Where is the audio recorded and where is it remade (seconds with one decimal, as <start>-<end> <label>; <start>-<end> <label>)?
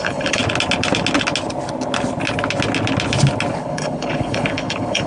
0.0-0.4 remade; 0.4-3.5 recorded; 3.5-5.1 remade